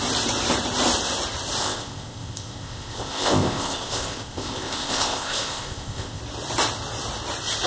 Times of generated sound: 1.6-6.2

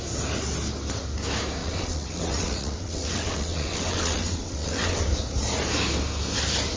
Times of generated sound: 1.6-5.0

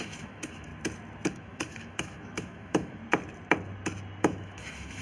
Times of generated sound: 0.0-0.7; 1.3-3.0; 4.2-5.0

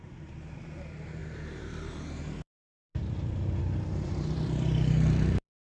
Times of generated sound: 0.0-5.8